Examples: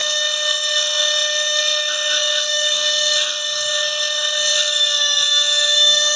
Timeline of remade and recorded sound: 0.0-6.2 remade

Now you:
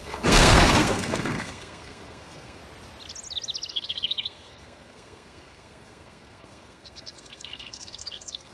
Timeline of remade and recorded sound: 0.0-2.6 remade; 2.6-3.7 recorded; 3.7-8.5 remade

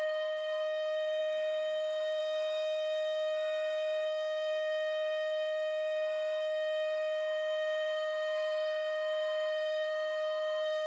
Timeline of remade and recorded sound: 0.0-10.9 remade

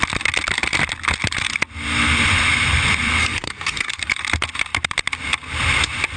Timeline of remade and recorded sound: 0.0-3.2 recorded; 3.2-4.0 remade; 4.0-6.2 recorded

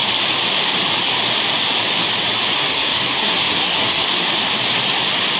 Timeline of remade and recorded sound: 0.0-2.6 recorded; 2.6-4.0 remade; 4.0-5.4 recorded

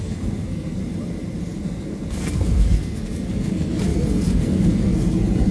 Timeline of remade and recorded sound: 0.0-0.8 remade; 0.8-1.6 recorded; 1.6-5.5 remade

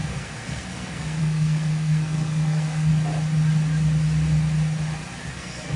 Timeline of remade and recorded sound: 0.0-2.9 remade; 2.9-5.3 recorded; 5.3-5.8 remade

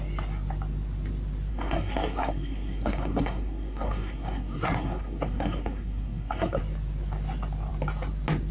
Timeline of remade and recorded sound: 0.0-1.5 recorded; 1.5-6.6 remade; 6.6-8.5 recorded